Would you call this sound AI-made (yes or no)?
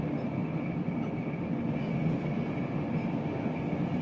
no